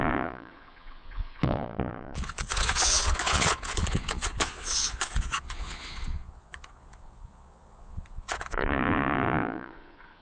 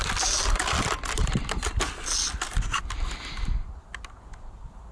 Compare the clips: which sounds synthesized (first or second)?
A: first